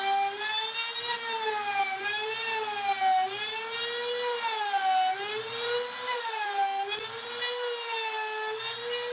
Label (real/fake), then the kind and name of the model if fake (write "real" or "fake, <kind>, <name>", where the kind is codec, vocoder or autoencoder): real